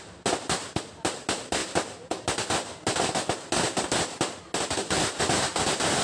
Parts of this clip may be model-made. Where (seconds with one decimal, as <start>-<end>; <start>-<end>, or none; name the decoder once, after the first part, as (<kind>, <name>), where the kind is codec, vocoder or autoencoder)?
none